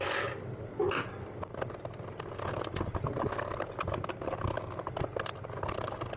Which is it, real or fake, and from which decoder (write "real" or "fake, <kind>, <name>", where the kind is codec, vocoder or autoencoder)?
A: real